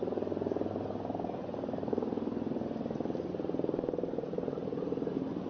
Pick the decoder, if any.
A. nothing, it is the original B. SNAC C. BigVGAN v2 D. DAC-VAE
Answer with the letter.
A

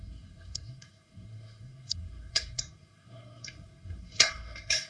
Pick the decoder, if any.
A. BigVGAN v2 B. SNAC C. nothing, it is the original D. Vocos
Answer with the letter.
B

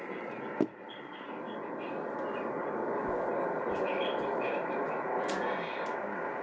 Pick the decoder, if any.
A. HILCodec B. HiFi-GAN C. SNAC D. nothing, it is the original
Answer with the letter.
D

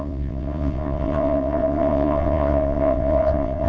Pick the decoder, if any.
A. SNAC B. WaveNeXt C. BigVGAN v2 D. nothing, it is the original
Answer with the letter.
B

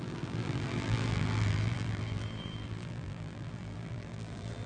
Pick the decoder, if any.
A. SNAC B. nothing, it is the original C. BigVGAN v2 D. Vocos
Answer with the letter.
C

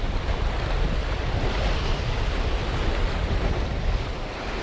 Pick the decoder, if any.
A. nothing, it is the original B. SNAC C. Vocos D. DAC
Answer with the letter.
A